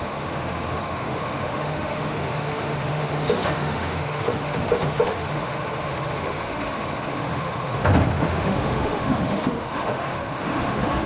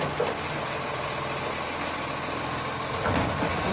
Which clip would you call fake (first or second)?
first